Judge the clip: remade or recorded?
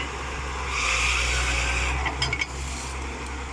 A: recorded